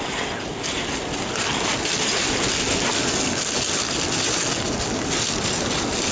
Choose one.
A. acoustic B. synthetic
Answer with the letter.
A